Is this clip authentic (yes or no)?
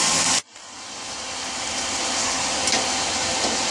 yes